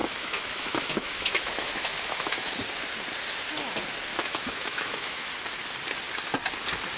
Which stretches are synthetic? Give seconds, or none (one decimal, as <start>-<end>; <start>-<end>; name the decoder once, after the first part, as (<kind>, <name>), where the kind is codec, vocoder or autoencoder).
0.0-2.5 (autoencoder, DAC-VAE); 4.1-5.2